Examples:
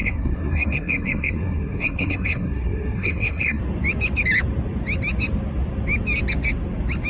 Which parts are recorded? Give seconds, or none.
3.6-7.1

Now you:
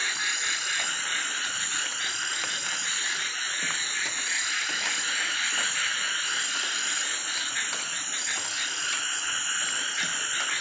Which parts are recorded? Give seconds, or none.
0.0-10.6

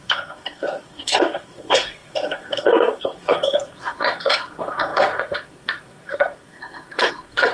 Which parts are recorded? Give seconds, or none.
none

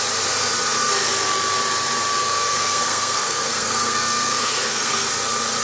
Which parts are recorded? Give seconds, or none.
0.0-2.2; 5.1-5.6

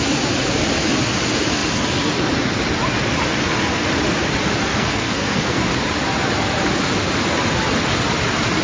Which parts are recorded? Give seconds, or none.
0.0-4.7; 5.6-8.6